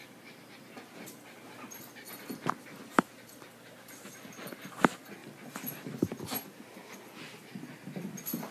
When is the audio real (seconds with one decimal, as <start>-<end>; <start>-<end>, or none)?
0.0-8.5